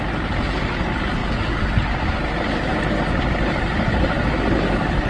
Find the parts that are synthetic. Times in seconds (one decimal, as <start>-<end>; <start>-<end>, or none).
none